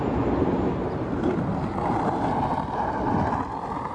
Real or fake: real